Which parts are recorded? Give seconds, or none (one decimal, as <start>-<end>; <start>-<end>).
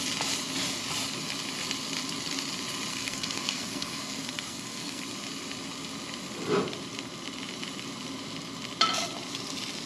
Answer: 0.0-2.9; 5.0-9.9